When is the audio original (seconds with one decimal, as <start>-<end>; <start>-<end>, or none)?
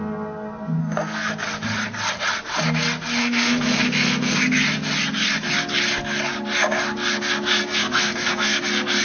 0.0-0.8; 1.3-3.2; 4.4-7.5; 8.6-9.0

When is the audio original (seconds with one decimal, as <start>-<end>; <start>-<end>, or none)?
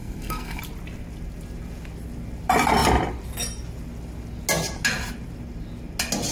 0.6-6.3